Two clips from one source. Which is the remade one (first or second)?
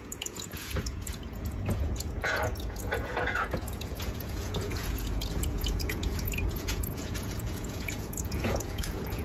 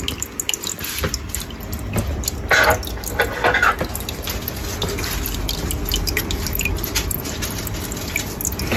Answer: first